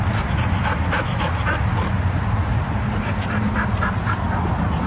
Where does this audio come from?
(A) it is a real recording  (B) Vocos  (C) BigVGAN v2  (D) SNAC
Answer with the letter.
A